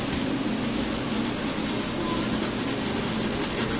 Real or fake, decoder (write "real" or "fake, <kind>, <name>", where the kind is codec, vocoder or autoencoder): real